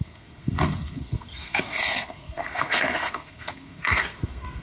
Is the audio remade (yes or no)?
yes